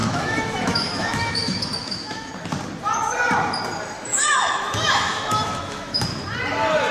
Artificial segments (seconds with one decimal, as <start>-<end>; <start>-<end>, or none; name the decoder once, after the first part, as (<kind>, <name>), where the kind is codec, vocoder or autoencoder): 0.0-2.3 (autoencoder, DAC-VAE); 4.1-6.0